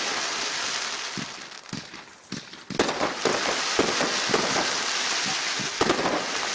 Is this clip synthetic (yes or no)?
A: no